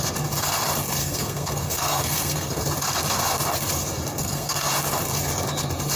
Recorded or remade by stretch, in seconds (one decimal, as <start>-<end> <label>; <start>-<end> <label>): 0.0-1.0 recorded; 1.0-2.6 remade; 2.6-4.2 recorded; 4.2-4.7 remade; 4.7-6.0 recorded